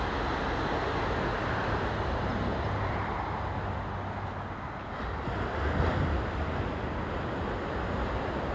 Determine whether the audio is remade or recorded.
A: recorded